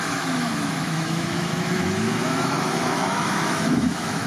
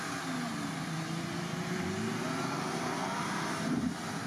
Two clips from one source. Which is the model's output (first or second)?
first